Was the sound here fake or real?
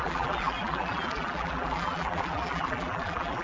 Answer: fake